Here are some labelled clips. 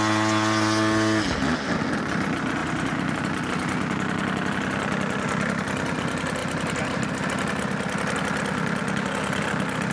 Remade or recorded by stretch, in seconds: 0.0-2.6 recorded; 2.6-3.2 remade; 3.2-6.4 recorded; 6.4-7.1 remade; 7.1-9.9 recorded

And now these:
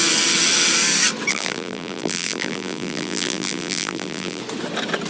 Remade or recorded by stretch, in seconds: 0.0-1.3 recorded; 1.3-4.4 remade; 4.4-5.1 recorded